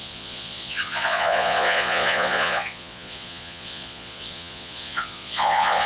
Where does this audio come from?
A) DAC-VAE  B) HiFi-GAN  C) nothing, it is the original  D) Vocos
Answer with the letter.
D